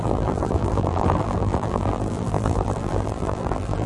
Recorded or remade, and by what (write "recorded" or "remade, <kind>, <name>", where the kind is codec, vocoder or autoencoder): remade, vocoder, BigVGAN v2